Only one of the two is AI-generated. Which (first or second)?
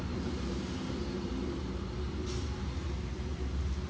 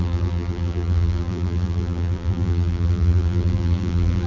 second